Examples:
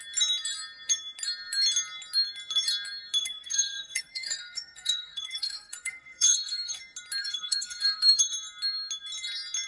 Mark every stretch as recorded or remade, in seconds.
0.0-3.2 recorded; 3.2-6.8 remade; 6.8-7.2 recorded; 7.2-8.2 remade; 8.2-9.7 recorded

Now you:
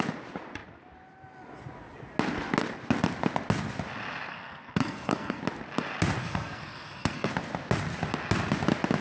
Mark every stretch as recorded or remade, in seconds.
0.0-4.3 recorded; 4.3-5.4 remade; 5.4-6.2 recorded; 6.2-7.3 remade; 7.3-9.0 recorded